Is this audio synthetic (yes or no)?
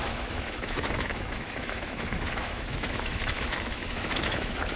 yes